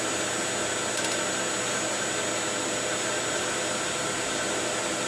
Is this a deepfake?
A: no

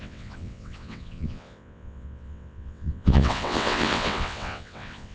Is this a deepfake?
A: yes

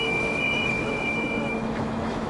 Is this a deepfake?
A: yes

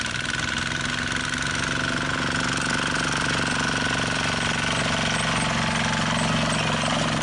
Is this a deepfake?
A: no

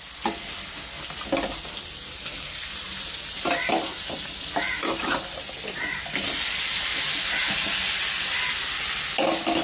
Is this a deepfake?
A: no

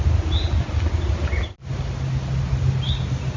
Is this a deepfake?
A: no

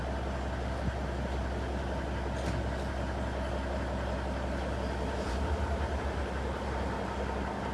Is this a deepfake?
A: no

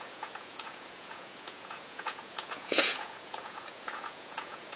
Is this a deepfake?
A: yes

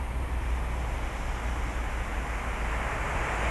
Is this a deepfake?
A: no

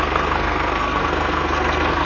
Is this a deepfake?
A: yes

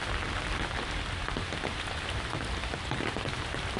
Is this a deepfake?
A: no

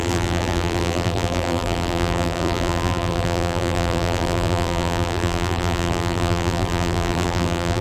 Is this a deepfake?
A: yes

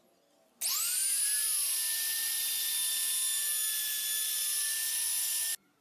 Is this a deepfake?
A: no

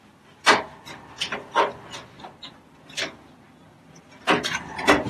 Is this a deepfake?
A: no